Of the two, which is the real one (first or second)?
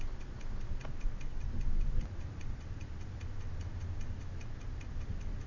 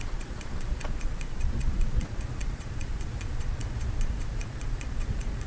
first